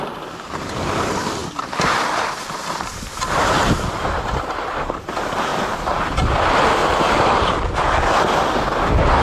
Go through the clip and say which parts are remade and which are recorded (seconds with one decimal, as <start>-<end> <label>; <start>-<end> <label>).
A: 0.0-1.4 recorded; 1.4-5.0 remade; 5.0-5.5 recorded; 5.5-6.0 remade; 6.0-6.8 recorded; 6.8-7.7 remade; 7.7-9.2 recorded